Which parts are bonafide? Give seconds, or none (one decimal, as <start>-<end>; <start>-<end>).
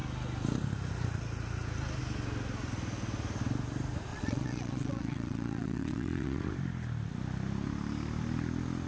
0.0-4.1; 6.5-8.9